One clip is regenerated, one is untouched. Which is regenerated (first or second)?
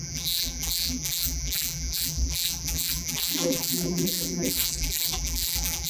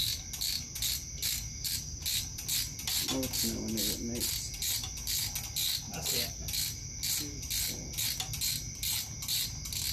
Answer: first